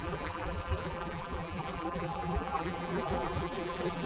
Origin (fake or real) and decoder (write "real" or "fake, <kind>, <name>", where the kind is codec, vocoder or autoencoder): fake, vocoder, BigVGAN v2